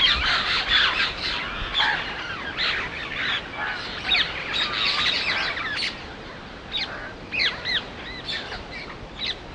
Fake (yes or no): no